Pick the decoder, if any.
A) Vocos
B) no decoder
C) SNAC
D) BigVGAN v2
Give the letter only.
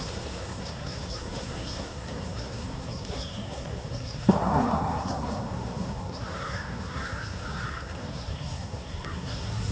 C